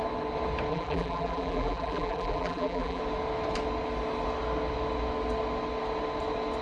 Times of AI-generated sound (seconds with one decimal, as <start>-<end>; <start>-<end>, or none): 0.7-3.0